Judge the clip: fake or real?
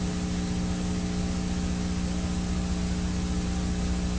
real